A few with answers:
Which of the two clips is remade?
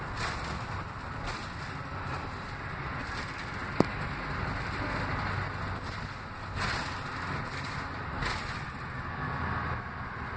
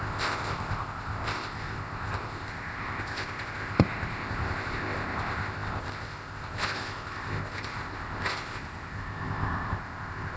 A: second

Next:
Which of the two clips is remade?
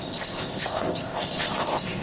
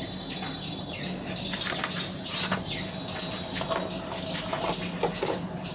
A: first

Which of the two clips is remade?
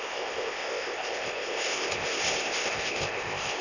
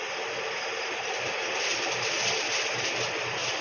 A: first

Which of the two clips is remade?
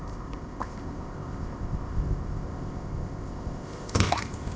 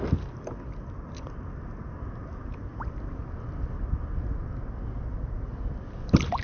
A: first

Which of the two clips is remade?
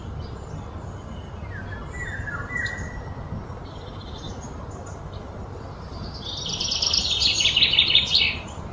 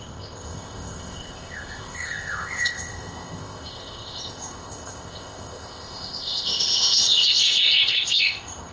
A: second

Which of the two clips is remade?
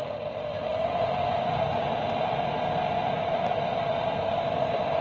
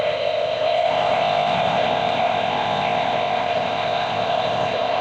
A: second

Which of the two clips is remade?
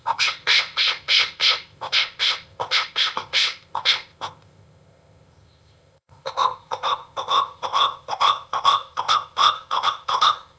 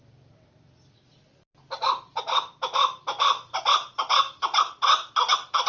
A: first